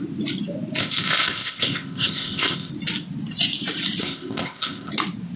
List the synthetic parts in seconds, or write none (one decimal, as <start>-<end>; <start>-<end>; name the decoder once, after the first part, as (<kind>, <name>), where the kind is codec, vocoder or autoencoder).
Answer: 0.8-2.7 (codec, ZipCodec); 4.0-4.9